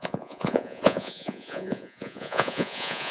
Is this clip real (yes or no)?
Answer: no